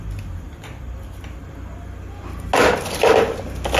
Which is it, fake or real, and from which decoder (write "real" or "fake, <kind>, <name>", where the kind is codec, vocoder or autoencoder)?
real